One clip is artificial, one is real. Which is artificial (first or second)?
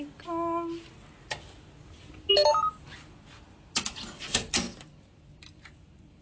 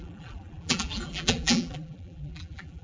second